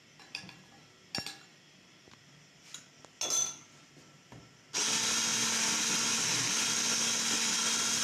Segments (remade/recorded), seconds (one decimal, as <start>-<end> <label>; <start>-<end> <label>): 0.0-8.0 recorded